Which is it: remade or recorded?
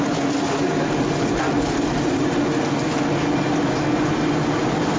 recorded